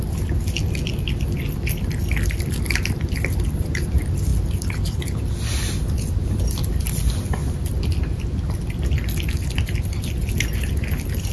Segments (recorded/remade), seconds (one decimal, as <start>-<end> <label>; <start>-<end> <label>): 0.0-11.3 recorded